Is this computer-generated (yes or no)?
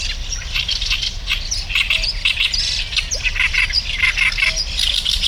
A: no